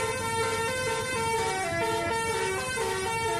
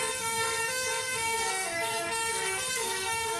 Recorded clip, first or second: first